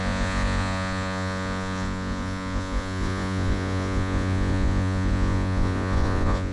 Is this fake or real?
fake